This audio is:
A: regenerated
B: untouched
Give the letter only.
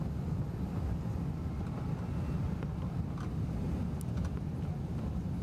B